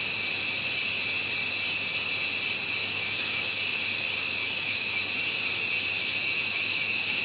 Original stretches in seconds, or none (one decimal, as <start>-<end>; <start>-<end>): 0.0-2.8; 3.6-4.4; 5.0-6.0